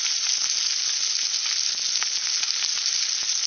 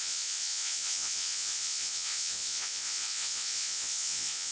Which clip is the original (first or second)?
first